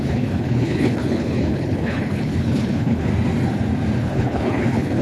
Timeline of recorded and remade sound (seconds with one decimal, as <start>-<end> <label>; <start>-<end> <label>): 0.0-3.1 remade; 3.1-4.0 recorded; 4.0-5.0 remade